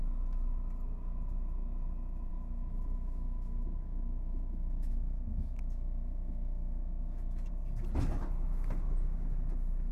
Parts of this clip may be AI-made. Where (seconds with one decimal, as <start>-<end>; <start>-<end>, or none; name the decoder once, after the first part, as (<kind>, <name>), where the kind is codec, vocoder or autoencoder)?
2.3-7.5 (autoencoder, DAC-VAE)